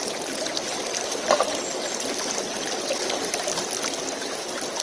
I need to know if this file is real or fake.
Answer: real